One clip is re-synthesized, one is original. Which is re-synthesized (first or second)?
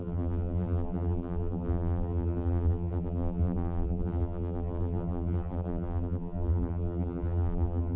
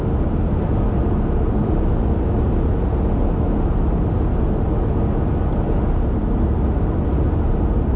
first